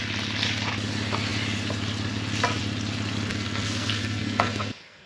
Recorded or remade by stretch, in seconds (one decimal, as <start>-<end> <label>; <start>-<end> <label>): 0.0-3.3 recorded; 3.3-5.1 remade